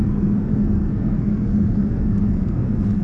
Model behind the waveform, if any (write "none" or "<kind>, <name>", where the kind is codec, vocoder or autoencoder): codec, SNAC